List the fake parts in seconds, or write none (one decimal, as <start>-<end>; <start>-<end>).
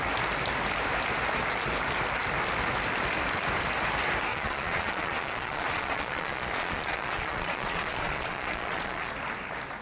4.3-9.1